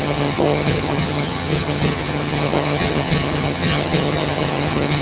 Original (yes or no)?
no